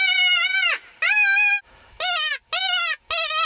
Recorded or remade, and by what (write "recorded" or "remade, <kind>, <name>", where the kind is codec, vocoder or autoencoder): recorded